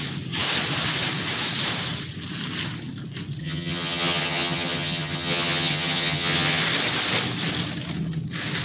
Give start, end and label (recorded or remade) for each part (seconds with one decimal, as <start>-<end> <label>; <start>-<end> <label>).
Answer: 0.0-3.4 recorded; 3.4-6.6 remade; 6.6-8.6 recorded